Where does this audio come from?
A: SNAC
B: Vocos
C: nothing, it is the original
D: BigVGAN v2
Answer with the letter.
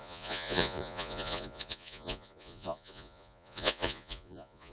B